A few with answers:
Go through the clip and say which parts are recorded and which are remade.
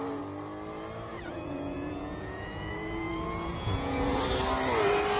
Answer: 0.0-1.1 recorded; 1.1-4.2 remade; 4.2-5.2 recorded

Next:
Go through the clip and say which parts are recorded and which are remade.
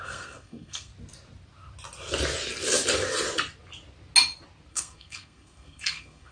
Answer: 0.0-0.9 remade; 0.9-4.7 recorded; 4.7-6.3 remade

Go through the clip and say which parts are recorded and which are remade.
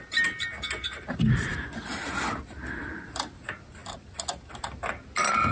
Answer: 0.0-5.5 recorded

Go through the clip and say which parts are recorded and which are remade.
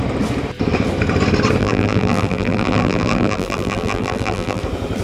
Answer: 0.0-1.6 recorded; 1.6-4.6 remade; 4.6-5.0 recorded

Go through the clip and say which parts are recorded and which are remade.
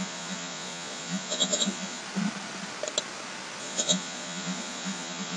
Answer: 0.0-2.0 remade; 2.0-3.6 recorded; 3.6-5.4 remade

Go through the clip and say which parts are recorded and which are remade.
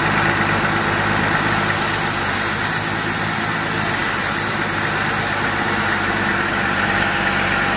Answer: 0.0-7.8 recorded